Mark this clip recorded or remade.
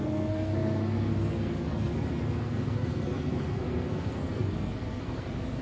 remade